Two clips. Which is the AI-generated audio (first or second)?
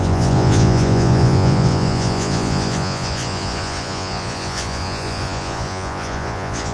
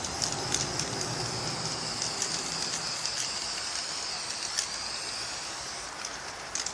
first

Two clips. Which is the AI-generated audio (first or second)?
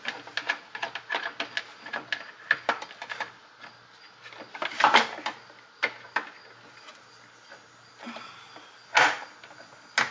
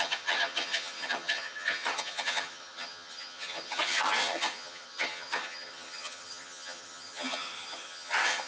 second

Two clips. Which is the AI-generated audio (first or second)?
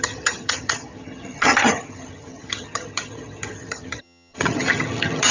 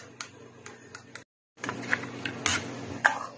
first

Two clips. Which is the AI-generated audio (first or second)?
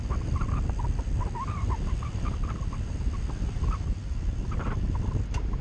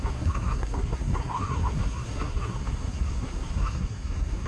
second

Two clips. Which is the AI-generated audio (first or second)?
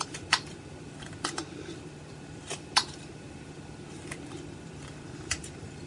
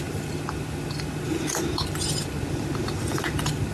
first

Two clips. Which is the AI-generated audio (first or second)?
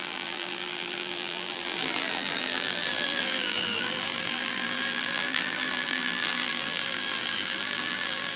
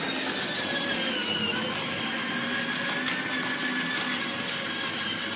first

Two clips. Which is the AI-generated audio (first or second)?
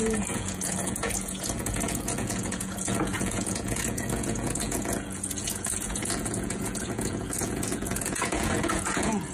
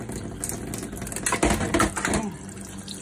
first